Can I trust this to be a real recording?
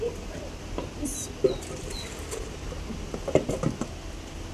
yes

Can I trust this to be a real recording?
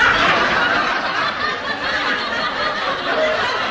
no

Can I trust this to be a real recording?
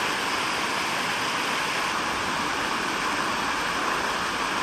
yes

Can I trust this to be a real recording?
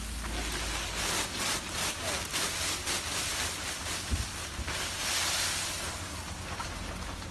yes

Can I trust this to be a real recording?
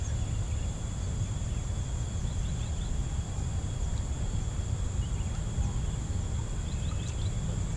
yes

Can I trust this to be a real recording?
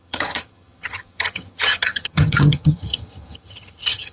no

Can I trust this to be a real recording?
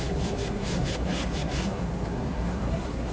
no